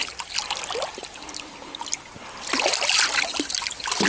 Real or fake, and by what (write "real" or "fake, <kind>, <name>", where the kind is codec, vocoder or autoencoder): real